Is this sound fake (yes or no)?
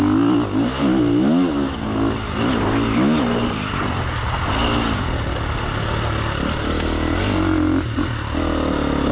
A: no